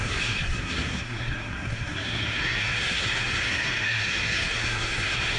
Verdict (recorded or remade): remade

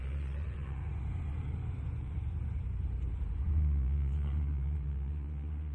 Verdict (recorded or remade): remade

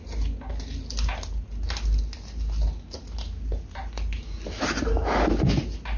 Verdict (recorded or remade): recorded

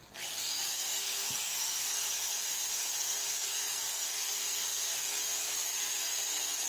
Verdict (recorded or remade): remade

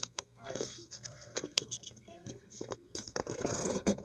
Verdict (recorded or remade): remade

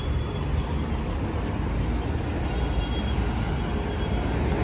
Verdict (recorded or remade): recorded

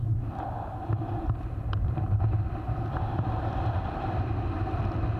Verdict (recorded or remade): remade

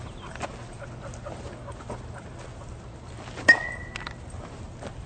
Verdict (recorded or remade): recorded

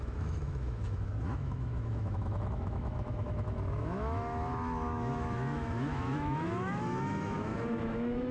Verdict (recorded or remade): remade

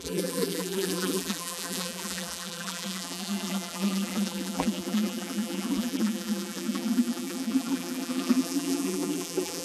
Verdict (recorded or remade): remade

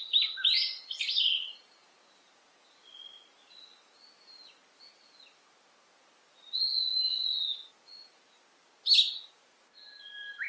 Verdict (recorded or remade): recorded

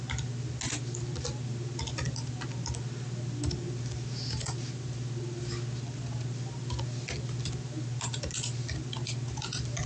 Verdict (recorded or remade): recorded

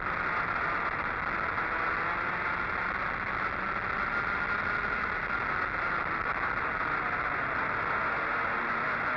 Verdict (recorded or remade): recorded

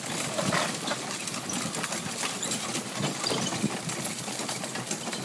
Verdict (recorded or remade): recorded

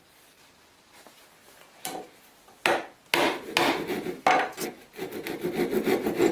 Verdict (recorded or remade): recorded